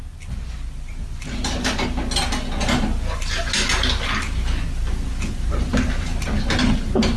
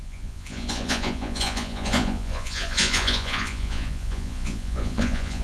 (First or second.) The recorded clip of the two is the first